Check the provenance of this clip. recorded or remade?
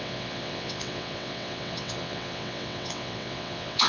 remade